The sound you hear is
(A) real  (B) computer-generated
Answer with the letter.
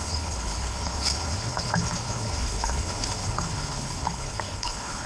B